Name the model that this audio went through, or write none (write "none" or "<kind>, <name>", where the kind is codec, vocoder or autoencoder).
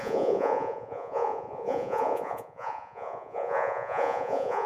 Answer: vocoder, Vocos